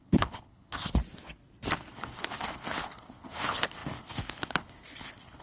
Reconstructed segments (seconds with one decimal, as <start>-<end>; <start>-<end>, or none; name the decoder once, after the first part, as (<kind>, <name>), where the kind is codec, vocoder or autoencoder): 0.0-1.0 (codec, HILCodec); 1.9-5.4